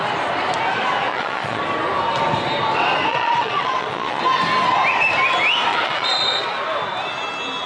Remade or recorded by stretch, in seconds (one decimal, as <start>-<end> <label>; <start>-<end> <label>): 0.0-1.1 recorded; 1.1-1.6 remade; 1.6-3.1 recorded; 3.1-4.2 remade; 4.2-5.7 recorded; 5.7-6.6 remade; 6.6-7.7 recorded